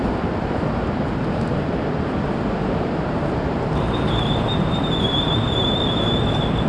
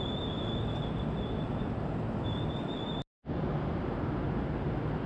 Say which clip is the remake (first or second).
first